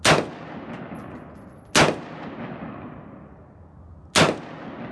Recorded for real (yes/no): yes